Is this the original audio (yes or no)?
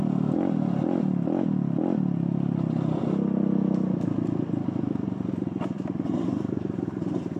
yes